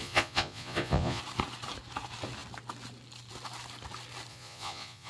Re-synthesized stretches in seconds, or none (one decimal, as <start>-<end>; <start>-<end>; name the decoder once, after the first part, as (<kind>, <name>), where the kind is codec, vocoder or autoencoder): 0.0-1.2 (vocoder, Vocos); 4.3-5.1